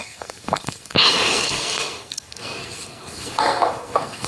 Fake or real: fake